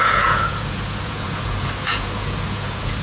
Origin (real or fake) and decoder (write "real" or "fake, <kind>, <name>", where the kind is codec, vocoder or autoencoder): fake, vocoder, Vocos